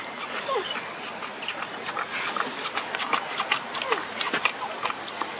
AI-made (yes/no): yes